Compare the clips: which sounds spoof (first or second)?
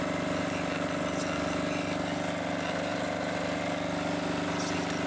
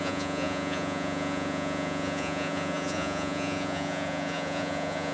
second